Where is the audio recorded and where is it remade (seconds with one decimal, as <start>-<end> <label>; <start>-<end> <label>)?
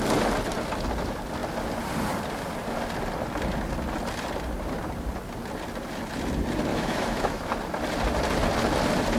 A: 0.0-6.7 recorded; 6.7-7.6 remade; 7.6-9.2 recorded